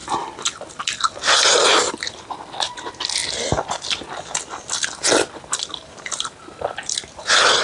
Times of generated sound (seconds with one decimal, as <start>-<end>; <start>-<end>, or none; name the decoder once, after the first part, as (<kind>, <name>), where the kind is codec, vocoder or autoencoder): none